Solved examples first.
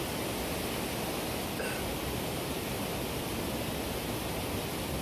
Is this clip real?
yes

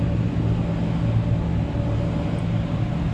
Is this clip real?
yes